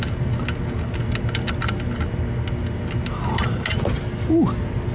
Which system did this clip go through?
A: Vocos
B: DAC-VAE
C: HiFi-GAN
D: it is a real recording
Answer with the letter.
D